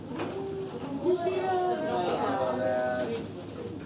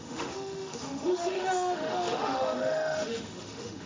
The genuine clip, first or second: first